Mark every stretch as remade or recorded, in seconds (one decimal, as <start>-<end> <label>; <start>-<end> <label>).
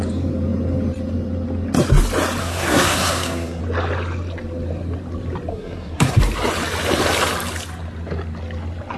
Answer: 0.0-2.4 recorded; 2.4-3.6 remade; 3.6-5.5 recorded; 5.5-6.2 remade; 6.2-9.0 recorded